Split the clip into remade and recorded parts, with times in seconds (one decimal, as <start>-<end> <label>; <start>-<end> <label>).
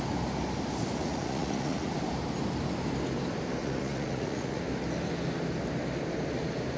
0.0-1.0 recorded; 1.0-1.9 remade; 1.9-3.6 recorded; 3.6-4.6 remade; 4.6-6.8 recorded